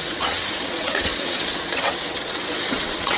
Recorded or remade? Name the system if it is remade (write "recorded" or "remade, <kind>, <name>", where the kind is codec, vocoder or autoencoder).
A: remade, vocoder, WaveNeXt